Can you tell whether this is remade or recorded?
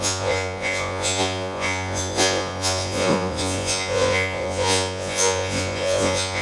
remade